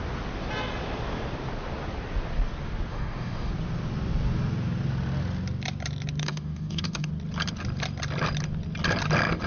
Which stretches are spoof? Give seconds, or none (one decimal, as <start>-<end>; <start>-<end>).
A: 2.9-3.5; 6.2-7.1